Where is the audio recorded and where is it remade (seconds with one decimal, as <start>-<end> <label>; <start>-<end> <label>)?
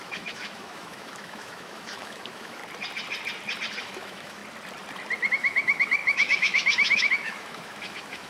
0.0-2.6 remade; 2.6-3.8 recorded; 3.8-4.4 remade; 4.4-5.3 recorded; 5.3-8.3 remade